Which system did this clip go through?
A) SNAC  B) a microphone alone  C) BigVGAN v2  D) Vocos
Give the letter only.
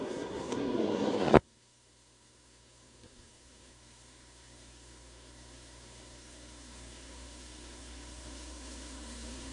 A